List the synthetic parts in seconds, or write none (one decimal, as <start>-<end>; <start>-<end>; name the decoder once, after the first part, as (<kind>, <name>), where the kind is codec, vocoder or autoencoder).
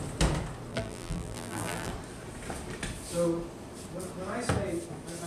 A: 0.7-1.9 (vocoder, BigVGAN v2)